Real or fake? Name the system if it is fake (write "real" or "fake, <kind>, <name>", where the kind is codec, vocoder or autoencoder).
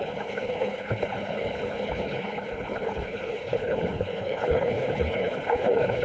fake, codec, HILCodec